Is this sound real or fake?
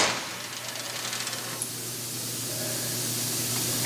real